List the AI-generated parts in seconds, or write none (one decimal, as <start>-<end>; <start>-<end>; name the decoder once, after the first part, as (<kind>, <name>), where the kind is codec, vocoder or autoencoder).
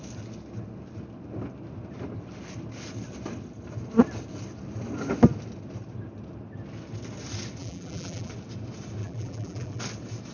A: 7.6-8.3 (vocoder, BigVGAN v2); 9.0-9.8